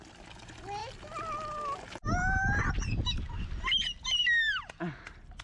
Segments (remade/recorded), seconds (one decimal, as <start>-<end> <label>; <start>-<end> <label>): 0.0-5.4 recorded

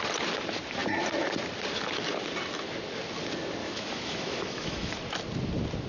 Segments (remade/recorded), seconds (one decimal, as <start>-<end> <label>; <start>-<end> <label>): 0.0-3.6 recorded; 3.6-4.9 remade; 4.9-5.9 recorded

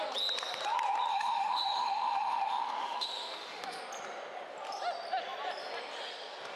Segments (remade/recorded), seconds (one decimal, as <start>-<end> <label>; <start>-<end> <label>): 0.0-1.1 recorded; 1.1-3.8 remade; 3.8-6.6 recorded

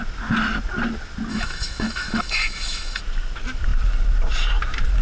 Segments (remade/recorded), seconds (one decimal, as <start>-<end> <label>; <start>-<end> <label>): 0.0-1.3 recorded; 1.3-3.0 remade; 3.0-5.0 recorded